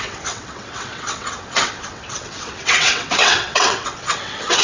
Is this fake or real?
fake